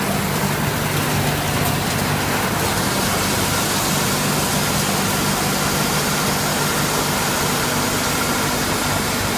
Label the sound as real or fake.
real